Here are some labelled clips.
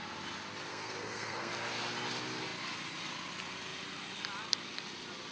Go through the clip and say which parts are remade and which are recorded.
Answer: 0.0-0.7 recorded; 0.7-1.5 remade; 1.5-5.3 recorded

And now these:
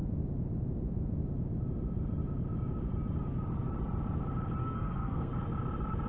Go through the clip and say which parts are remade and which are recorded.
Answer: 0.0-4.6 recorded; 4.6-5.3 remade; 5.3-6.1 recorded

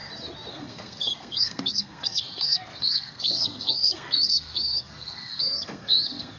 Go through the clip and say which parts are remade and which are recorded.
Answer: 0.0-0.5 recorded; 0.5-6.4 remade